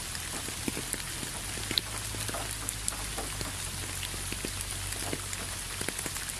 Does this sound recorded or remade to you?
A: recorded